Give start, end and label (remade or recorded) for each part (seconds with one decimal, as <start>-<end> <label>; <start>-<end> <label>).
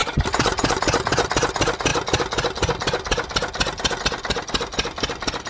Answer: 0.0-0.8 remade; 0.8-5.5 recorded